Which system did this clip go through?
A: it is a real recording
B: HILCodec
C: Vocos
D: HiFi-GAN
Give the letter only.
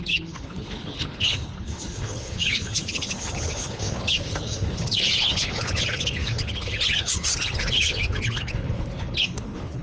B